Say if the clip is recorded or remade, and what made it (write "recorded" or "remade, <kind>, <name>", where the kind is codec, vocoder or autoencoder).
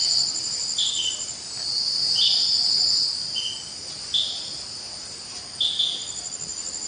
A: recorded